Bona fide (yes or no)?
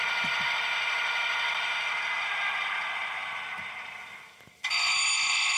yes